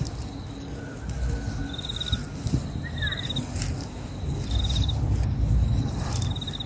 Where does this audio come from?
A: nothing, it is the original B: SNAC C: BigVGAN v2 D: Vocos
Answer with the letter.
A